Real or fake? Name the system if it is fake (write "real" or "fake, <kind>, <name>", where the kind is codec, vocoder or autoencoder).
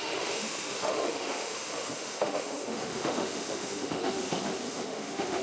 fake, autoencoder, DAC-VAE